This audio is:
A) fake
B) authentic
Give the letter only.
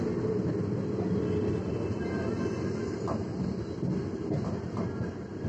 B